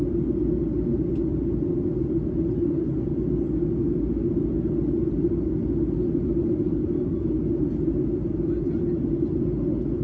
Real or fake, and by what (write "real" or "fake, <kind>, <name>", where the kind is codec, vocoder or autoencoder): real